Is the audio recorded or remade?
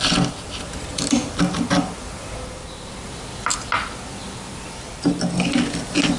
recorded